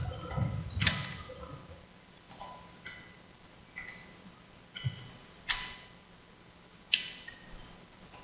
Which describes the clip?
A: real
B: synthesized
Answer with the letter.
A